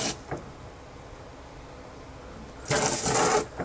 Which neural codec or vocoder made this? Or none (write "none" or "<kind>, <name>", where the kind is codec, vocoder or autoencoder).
none